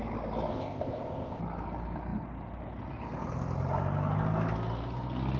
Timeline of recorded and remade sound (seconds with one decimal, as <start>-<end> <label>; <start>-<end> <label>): 0.0-0.5 recorded; 0.5-1.4 remade; 1.4-5.4 recorded